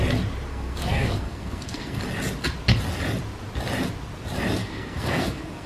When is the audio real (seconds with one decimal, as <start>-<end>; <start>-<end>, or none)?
0.0-0.5; 2.0-4.6